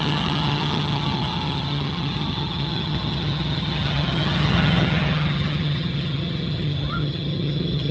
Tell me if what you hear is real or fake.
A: fake